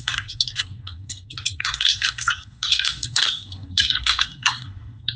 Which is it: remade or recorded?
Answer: remade